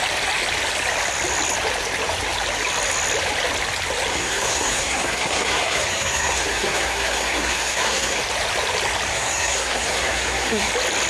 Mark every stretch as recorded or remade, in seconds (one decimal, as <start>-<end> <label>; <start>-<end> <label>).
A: 0.0-4.1 recorded; 4.1-8.2 remade; 8.2-9.1 recorded; 9.1-10.7 remade; 10.7-11.1 recorded